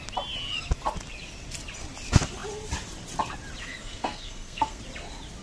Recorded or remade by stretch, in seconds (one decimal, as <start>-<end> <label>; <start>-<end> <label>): 0.0-3.6 recorded; 3.6-4.8 remade; 4.8-5.4 recorded